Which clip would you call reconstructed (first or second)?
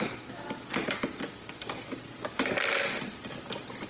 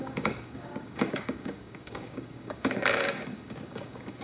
second